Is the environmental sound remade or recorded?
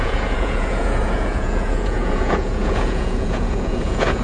remade